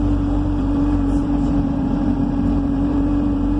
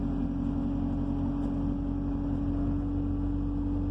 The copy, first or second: first